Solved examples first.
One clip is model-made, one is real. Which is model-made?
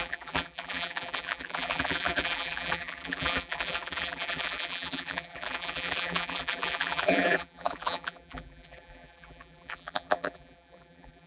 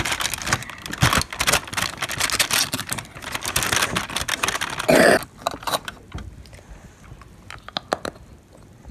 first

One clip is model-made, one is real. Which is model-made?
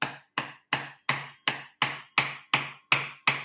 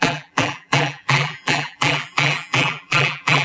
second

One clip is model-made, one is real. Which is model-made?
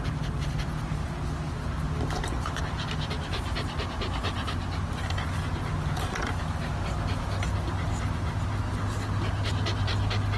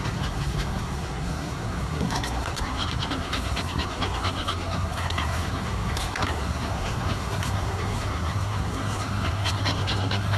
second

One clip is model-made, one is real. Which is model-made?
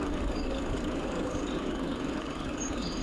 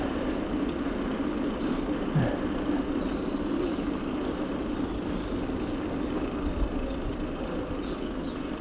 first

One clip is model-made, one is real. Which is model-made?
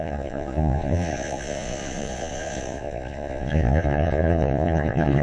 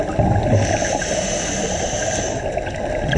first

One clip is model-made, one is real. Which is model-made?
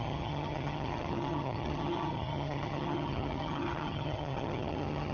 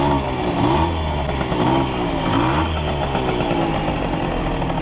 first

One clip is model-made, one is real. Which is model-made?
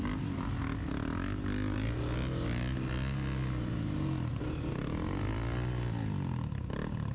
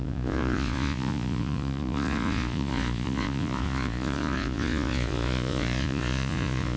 second